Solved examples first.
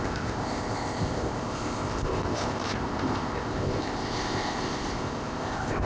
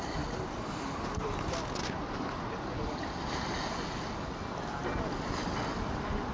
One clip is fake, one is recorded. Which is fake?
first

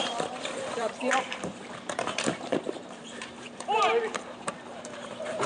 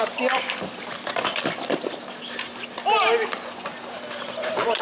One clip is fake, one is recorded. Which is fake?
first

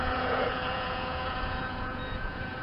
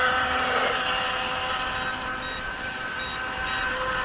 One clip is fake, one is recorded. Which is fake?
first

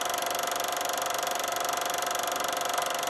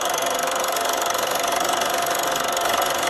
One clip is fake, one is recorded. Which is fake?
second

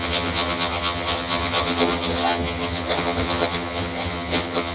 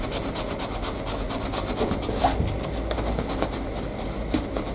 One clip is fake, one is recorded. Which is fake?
first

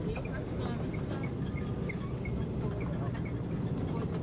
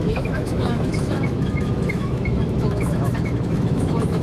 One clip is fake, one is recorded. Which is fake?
second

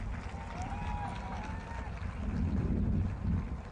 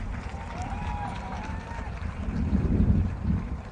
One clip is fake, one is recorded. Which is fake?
second